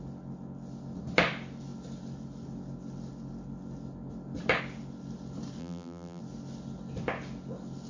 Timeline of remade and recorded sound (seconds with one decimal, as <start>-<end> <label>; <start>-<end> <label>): 0.0-5.6 recorded; 5.6-6.2 remade; 6.2-7.9 recorded